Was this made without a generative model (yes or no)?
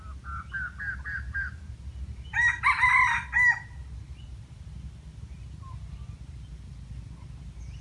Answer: yes